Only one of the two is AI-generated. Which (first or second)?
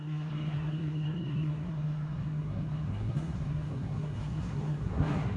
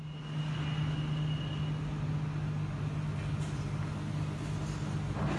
first